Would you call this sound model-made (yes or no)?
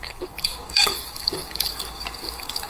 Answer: yes